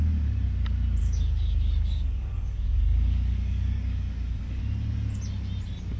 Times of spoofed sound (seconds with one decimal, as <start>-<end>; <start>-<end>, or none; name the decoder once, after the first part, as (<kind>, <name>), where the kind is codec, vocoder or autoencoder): 1.0-4.6 (codec, DAC)